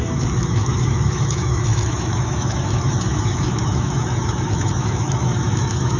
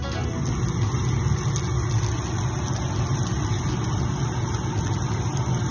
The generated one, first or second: first